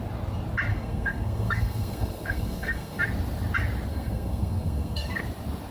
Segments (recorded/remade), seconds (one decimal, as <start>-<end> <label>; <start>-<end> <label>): 0.0-0.7 recorded; 0.7-3.0 remade; 3.0-3.9 recorded; 3.9-5.2 remade; 5.2-5.7 recorded